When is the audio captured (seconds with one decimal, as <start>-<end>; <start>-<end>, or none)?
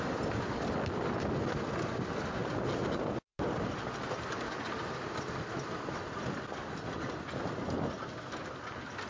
0.0-9.1